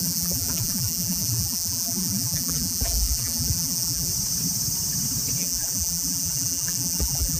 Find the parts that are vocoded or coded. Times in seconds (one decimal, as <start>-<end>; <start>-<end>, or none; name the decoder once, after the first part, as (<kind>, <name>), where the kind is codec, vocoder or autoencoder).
0.0-4.1 (vocoder, BigVGAN v2); 5.4-7.4